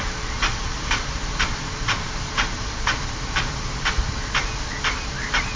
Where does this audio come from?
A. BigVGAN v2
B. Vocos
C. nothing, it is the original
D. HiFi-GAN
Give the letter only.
A